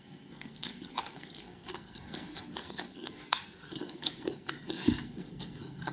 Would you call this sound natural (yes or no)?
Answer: no